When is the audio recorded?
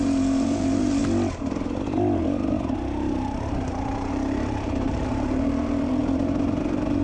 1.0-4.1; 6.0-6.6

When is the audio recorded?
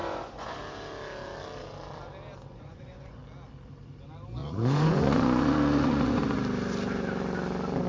0.6-2.5; 3.2-4.4; 6.2-7.9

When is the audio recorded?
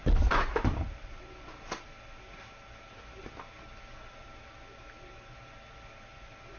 0.0-6.6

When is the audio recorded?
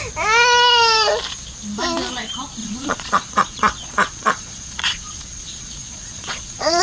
0.0-2.6